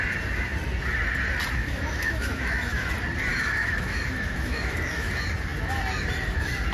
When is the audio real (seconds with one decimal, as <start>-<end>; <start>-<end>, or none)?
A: 0.0-1.6; 2.9-3.3; 5.1-6.7